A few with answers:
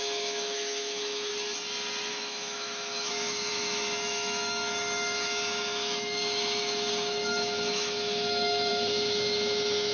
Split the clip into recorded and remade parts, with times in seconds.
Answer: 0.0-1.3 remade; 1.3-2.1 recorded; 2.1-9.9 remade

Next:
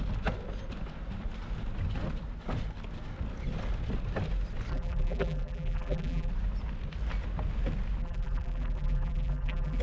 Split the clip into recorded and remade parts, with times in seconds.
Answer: 0.0-4.7 recorded; 4.7-6.3 remade; 6.3-8.0 recorded; 8.0-9.8 remade